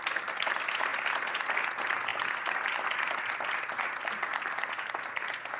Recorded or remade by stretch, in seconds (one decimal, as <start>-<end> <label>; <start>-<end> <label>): 0.0-2.1 recorded; 2.1-3.3 remade; 3.3-4.3 recorded; 4.3-4.8 remade; 4.8-5.6 recorded